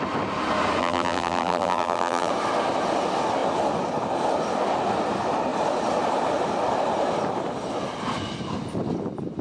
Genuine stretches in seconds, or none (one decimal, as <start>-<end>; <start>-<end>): 0.0-0.8; 2.3-9.4